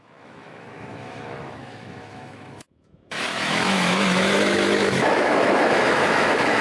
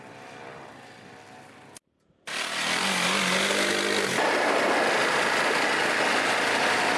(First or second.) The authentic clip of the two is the second